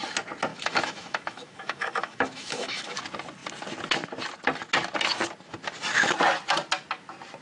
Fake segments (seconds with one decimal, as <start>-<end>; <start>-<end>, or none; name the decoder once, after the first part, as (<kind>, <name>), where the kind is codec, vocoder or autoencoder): 0.5-3.0 (autoencoder, DAC-VAE)